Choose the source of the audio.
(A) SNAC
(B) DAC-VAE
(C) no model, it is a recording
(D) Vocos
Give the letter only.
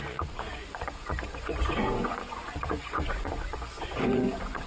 D